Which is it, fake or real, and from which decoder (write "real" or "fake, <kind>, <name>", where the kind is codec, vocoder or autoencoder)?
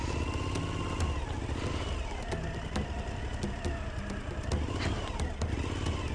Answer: real